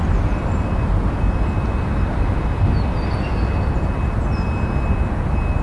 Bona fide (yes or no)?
yes